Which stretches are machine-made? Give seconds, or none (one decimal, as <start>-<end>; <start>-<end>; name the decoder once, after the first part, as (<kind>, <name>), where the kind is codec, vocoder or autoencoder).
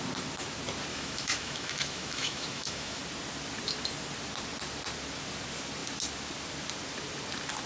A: 0.9-3.0 (autoencoder, DAC-VAE)